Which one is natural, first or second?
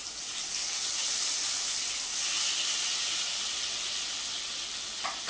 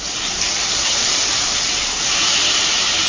first